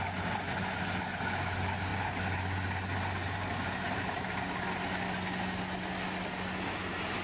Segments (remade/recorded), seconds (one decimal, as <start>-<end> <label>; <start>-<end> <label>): 0.0-7.2 recorded

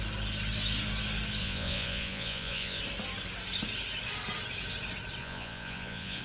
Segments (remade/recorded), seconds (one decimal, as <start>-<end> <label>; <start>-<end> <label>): 0.0-1.4 recorded; 1.4-2.8 remade; 2.8-5.2 recorded; 5.2-6.2 remade

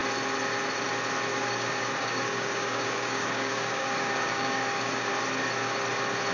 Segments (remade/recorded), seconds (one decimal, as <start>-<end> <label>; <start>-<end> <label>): 0.0-1.3 recorded; 1.3-5.1 remade; 5.1-6.3 recorded

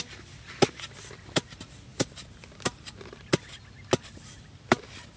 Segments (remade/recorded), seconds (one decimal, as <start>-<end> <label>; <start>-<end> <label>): 0.0-5.2 recorded

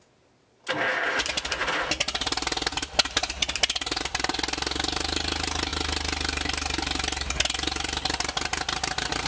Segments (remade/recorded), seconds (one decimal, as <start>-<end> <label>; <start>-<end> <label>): 0.0-9.3 recorded

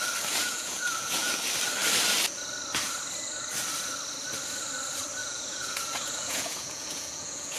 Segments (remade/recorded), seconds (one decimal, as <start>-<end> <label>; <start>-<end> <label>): 0.0-0.4 recorded; 0.4-1.3 remade; 1.3-5.2 recorded; 5.2-7.6 remade